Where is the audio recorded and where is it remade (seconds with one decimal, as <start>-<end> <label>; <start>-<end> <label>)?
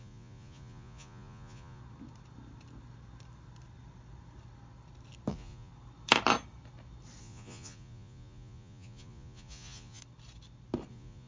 0.0-1.8 remade; 1.8-5.3 recorded; 5.3-5.7 remade; 5.7-7.2 recorded; 7.2-10.0 remade; 10.0-10.9 recorded; 10.9-11.3 remade